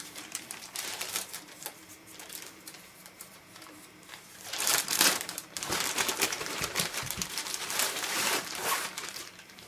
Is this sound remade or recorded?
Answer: remade